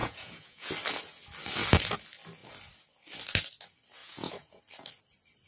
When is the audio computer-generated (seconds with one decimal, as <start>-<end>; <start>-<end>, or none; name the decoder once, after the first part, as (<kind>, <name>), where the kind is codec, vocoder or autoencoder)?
0.0-0.7 (vocoder, Vocos); 4.0-4.6